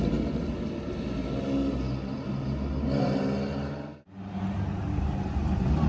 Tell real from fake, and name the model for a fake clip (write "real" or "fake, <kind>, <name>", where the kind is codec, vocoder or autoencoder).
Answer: real